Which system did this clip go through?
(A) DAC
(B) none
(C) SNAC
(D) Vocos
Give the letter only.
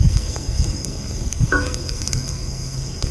C